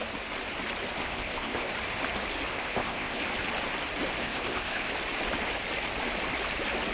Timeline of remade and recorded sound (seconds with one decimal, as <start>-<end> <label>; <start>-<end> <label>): 0.0-1.0 recorded; 1.0-1.7 remade; 1.7-2.5 recorded; 2.5-3.2 remade; 3.2-4.2 recorded; 4.2-4.9 remade; 4.9-6.9 recorded